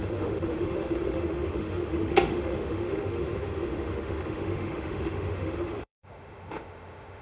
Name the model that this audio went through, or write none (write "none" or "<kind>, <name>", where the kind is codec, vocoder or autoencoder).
autoencoder, DAC-VAE